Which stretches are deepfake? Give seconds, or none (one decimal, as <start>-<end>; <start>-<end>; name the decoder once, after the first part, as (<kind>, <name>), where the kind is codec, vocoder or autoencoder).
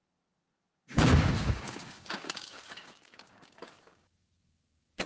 0.0-5.1 (codec, DAC)